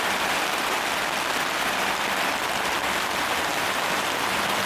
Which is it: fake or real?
real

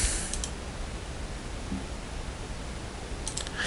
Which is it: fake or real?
real